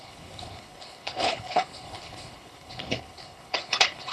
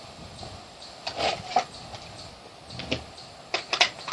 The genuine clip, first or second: second